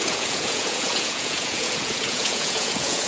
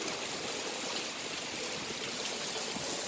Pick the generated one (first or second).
first